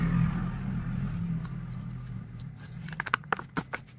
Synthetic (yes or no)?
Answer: no